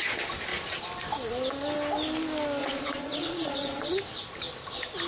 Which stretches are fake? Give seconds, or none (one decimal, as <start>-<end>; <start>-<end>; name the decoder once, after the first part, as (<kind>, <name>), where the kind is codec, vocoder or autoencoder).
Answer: 2.6-4.0 (vocoder, Vocos)